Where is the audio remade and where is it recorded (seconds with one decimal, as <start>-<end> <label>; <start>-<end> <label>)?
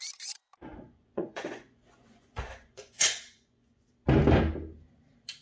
0.0-0.7 recorded; 0.7-3.9 remade; 3.9-5.4 recorded